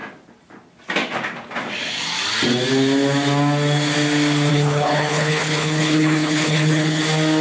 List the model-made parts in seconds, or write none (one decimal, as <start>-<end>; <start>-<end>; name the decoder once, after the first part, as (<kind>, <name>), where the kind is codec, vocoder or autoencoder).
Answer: 4.5-7.0 (codec, HILCodec)